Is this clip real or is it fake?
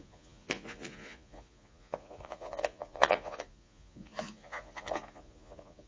fake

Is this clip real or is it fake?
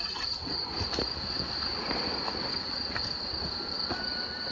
real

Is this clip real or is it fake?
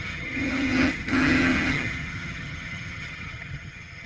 fake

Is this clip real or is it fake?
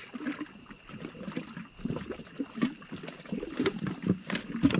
real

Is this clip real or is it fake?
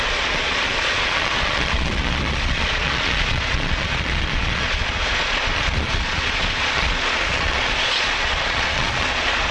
fake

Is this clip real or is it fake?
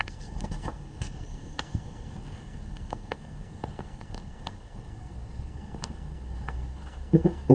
fake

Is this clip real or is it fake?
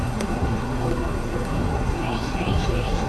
fake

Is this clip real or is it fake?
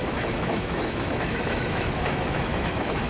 fake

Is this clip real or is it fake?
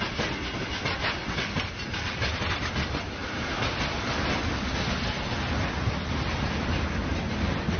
real